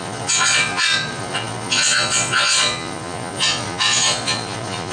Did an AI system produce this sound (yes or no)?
yes